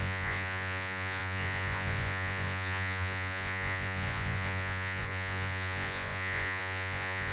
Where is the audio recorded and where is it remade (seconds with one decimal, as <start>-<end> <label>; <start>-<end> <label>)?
0.0-7.3 remade